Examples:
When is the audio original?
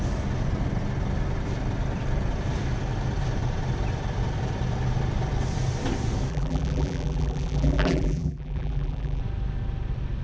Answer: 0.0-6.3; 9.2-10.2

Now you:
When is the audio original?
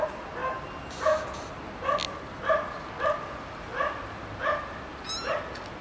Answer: 0.0-5.8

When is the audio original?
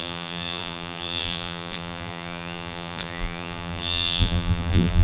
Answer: none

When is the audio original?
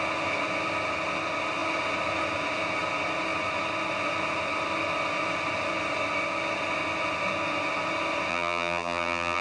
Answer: 0.0-8.3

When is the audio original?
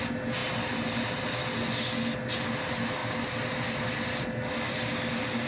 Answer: 0.0-5.5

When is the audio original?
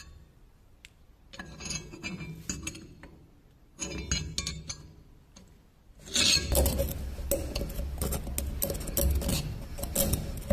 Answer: 0.0-10.5